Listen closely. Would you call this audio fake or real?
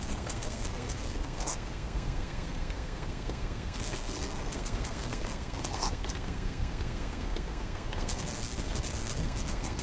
fake